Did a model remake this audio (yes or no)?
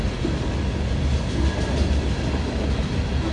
no